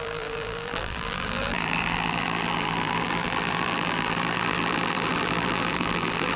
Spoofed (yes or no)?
yes